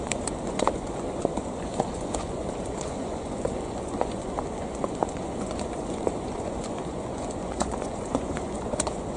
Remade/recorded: remade